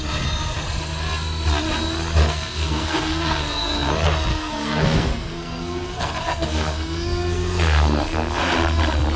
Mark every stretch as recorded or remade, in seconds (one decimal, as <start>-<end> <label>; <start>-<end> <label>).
0.0-2.2 recorded; 2.2-3.9 remade; 3.9-4.3 recorded; 4.3-8.4 remade; 8.4-9.2 recorded